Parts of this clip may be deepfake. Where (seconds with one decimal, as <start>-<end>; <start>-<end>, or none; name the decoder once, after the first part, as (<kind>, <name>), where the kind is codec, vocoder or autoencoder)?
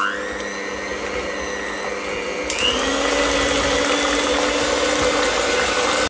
none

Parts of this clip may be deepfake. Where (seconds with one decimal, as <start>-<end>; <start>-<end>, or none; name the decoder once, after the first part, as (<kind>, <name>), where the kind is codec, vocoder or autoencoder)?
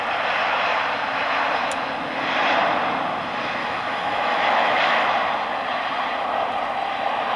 3.6-5.1 (autoencoder, DAC-VAE)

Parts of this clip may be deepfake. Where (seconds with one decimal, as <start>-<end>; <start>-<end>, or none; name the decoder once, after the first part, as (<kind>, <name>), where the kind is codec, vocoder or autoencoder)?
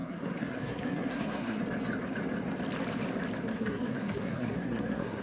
0.0-1.6 (codec, SNAC); 3.5-5.2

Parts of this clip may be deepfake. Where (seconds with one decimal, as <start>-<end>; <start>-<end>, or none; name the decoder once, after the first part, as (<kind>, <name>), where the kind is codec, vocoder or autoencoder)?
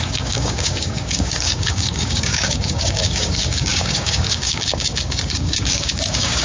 0.0-6.4 (codec, DAC)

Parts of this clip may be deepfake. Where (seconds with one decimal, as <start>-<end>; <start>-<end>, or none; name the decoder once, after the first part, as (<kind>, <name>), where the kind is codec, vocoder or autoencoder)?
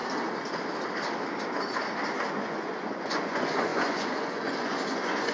2.3-5.3 (vocoder, Vocos)